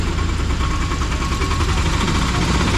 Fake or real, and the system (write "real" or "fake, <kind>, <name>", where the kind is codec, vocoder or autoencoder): real